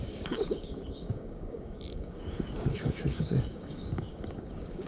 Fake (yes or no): yes